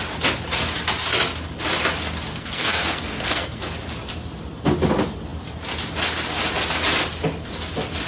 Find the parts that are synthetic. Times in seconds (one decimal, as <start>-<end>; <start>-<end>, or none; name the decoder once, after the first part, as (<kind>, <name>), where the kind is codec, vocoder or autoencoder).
2.3-3.6 (codec, SNAC)